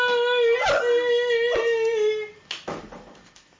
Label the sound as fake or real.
real